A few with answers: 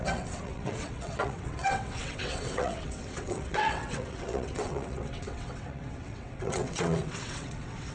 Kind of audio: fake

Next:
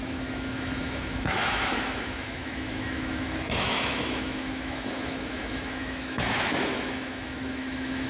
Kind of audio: fake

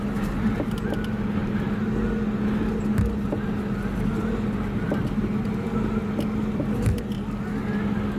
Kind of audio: real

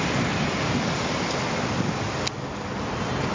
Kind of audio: real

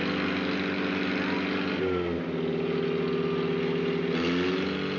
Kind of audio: real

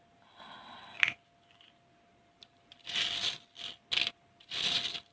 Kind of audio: real